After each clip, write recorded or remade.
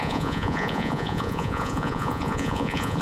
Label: remade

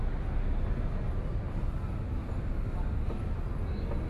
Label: recorded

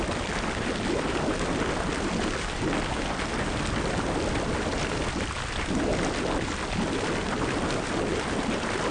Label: recorded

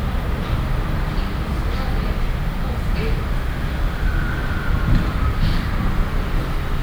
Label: recorded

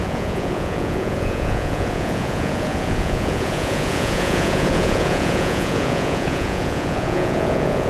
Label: remade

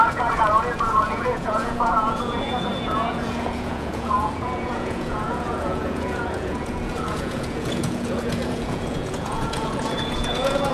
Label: remade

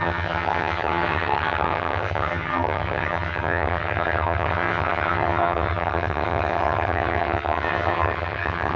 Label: remade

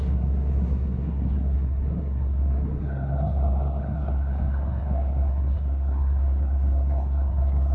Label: remade